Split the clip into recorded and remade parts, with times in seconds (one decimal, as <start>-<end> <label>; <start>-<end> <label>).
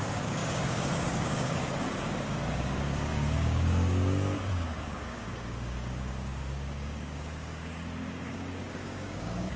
0.0-9.6 remade